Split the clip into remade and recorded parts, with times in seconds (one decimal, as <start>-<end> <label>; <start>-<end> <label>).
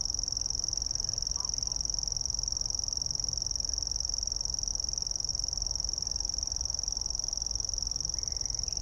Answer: 0.0-8.8 recorded